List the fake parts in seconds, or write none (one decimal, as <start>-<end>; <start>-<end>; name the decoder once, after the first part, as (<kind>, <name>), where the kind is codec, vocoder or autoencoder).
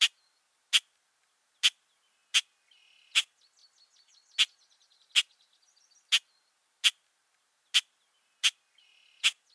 none